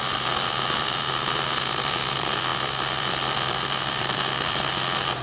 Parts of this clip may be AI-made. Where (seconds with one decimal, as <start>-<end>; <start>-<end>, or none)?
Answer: 0.0-5.2